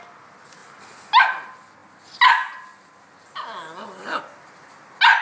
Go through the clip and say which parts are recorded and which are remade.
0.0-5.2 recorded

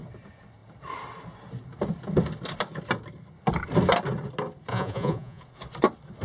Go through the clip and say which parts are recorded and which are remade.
0.0-4.7 recorded; 4.7-5.4 remade; 5.4-6.2 recorded

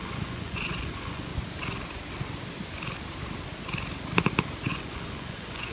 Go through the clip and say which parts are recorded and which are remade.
0.0-1.3 remade; 1.3-4.7 recorded; 4.7-5.7 remade

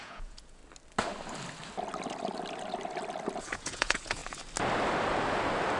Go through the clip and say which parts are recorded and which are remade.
0.0-0.6 remade; 0.6-3.4 recorded; 3.4-4.2 remade; 4.2-5.8 recorded